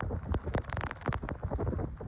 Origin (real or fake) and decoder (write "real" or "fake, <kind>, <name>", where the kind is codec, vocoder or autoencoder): real